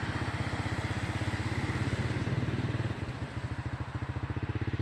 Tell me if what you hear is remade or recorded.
recorded